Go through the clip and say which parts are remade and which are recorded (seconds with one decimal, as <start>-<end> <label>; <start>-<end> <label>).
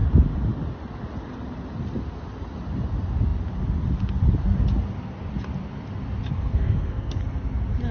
0.0-6.4 recorded; 6.4-7.2 remade; 7.2-7.9 recorded